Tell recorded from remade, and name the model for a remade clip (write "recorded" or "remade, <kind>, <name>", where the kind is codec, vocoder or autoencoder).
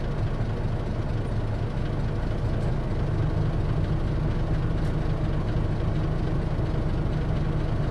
recorded